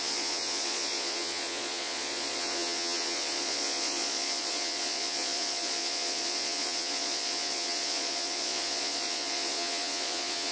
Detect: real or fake fake